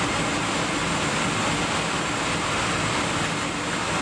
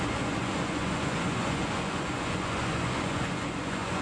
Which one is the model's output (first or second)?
second